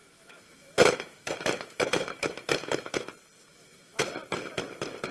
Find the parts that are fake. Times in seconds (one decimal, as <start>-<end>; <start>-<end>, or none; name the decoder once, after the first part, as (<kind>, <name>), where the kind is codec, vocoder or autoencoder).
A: 0.0-3.1 (autoencoder, DAC-VAE); 3.5-4.0